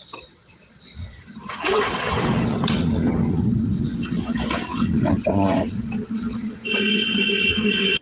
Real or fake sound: fake